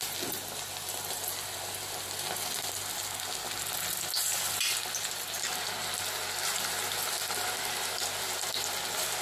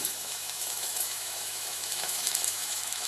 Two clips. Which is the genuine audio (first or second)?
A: first